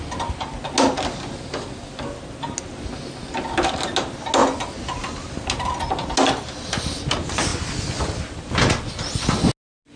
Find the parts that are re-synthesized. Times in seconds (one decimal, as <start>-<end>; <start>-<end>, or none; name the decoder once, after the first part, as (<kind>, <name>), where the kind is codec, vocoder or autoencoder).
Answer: none

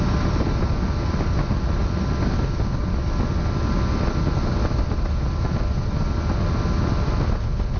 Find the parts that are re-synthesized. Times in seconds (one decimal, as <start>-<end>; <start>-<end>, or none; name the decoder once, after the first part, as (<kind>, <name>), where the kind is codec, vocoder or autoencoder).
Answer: none